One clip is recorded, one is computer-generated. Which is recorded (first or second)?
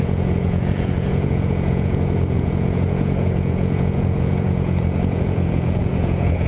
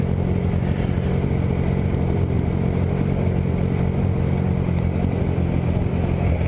second